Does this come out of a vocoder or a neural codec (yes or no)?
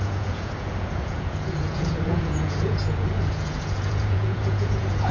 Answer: yes